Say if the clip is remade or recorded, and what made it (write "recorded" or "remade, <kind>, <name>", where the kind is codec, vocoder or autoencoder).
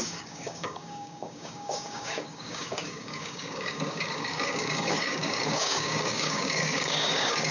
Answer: remade, codec, DAC